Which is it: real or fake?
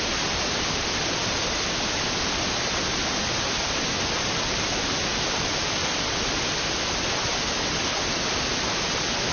real